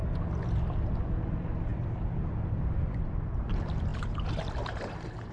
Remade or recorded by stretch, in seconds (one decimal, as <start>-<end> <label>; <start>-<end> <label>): 0.0-0.6 recorded; 0.6-5.3 remade